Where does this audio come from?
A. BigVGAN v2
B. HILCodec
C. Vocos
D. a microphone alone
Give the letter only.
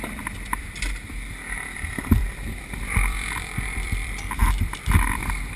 A